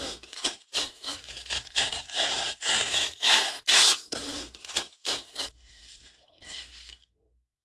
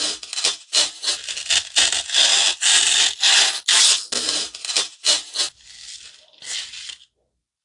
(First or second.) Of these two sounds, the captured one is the second